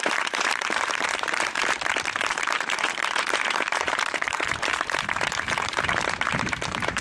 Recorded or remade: remade